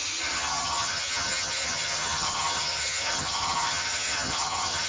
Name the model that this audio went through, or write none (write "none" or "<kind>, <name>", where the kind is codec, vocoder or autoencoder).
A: vocoder, HiFi-GAN